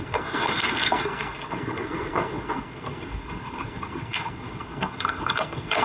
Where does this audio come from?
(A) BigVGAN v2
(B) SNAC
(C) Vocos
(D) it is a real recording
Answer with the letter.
B